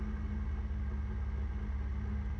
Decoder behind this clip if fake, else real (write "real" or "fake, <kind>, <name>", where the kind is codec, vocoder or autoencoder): real